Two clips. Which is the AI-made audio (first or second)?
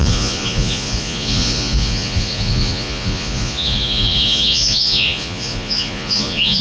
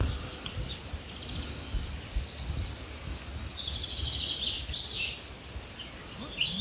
first